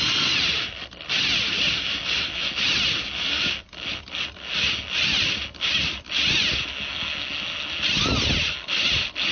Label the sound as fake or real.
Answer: real